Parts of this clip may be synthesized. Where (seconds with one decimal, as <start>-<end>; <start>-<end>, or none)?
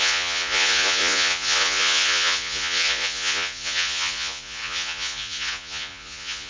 0.0-6.5